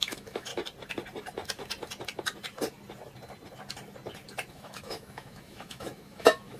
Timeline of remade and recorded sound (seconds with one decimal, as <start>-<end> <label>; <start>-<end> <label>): 0.0-0.5 remade; 0.5-4.5 recorded; 4.5-6.6 remade